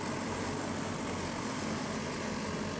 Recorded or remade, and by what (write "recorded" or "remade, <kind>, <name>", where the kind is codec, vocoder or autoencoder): recorded